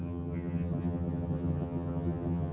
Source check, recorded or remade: remade